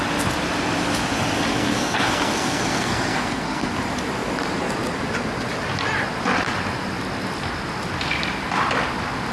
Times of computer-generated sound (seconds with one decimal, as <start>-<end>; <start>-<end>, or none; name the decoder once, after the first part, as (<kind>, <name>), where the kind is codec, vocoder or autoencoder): 1.5-3.7 (codec, SNAC)

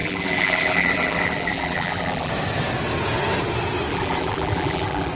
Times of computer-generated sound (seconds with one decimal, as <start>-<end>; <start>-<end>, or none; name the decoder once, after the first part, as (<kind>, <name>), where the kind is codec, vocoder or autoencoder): 0.0-2.3 (vocoder, BigVGAN v2); 3.9-5.1

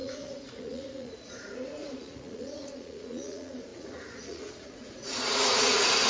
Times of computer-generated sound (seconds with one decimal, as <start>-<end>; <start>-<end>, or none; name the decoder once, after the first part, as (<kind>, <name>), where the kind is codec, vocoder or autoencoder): 0.0-6.1 (vocoder, Vocos)

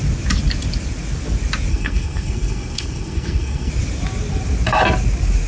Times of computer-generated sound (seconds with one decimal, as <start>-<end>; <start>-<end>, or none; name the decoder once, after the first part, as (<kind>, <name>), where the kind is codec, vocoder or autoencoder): 1.7-3.7 (codec, SNAC)

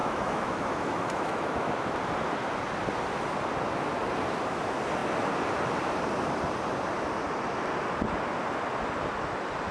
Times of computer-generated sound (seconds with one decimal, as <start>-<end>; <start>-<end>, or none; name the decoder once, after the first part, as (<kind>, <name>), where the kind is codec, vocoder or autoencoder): 0.0-1.7 (autoencoder, DAC-VAE)

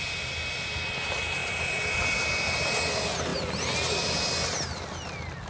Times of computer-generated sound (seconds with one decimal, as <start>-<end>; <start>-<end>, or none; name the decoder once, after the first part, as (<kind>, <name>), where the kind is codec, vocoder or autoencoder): none